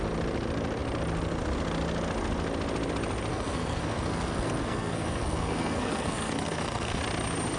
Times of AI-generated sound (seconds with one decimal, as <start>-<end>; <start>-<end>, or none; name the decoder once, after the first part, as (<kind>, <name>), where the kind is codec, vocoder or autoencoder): 3.3-7.0 (codec, SNAC)